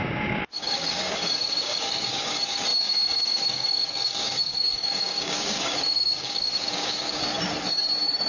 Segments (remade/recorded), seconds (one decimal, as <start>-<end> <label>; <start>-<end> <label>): 0.0-7.2 remade; 7.2-8.3 recorded